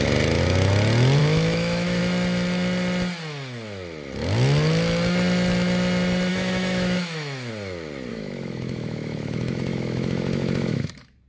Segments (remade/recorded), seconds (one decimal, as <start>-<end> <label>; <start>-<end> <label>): 0.0-1.2 recorded; 1.2-2.0 remade; 2.0-6.3 recorded; 6.3-7.5 remade; 7.5-8.1 recorded; 8.1-10.9 remade; 10.9-11.3 recorded